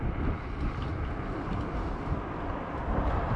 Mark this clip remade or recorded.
recorded